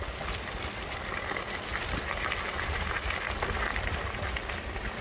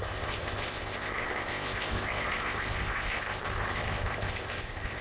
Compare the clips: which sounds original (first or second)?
first